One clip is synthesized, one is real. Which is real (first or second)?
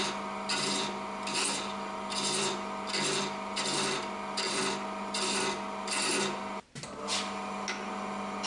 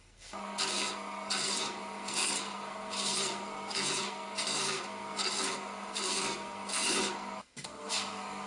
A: first